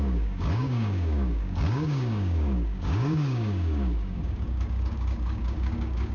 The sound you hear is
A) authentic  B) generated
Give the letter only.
B